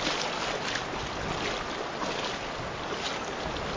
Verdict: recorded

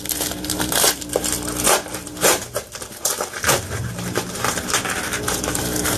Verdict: remade